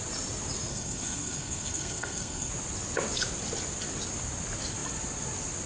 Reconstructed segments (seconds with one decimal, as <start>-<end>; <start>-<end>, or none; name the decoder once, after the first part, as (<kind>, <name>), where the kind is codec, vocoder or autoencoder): 0.7-2.5 (codec, SNAC)